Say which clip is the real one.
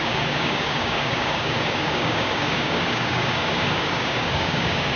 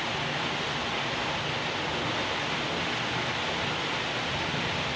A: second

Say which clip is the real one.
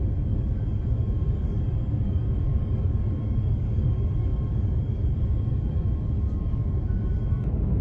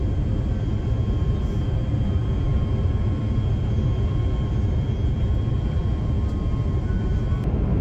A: second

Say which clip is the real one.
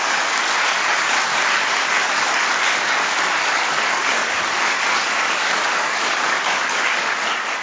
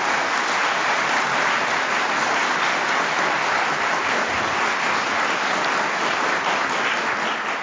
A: second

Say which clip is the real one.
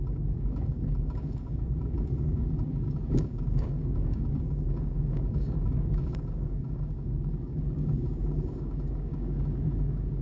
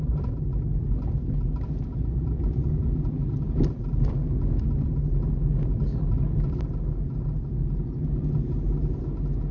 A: second